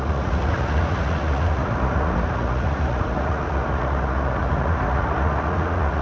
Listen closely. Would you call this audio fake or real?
fake